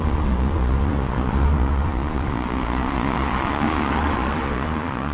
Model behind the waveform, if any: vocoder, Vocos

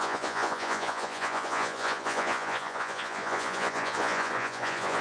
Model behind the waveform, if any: vocoder, Vocos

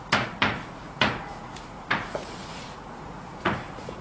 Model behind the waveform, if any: vocoder, Vocos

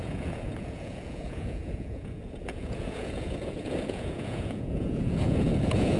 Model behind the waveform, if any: vocoder, Vocos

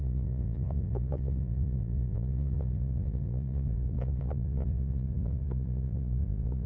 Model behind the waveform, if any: vocoder, Vocos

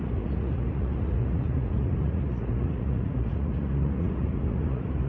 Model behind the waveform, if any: vocoder, Vocos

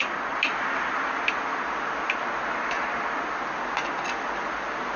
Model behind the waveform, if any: none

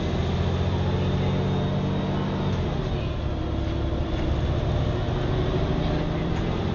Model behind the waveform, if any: none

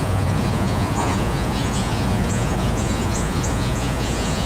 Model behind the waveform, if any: vocoder, Vocos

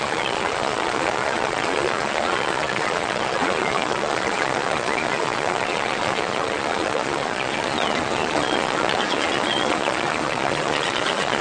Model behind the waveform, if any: vocoder, Vocos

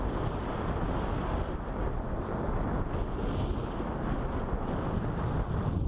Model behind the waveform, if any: none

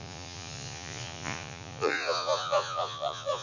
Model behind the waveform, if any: vocoder, Vocos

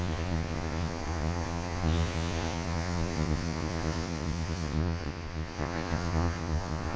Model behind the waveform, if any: vocoder, Vocos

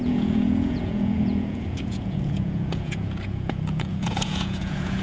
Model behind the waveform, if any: vocoder, Vocos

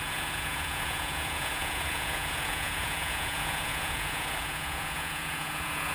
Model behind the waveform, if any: vocoder, Vocos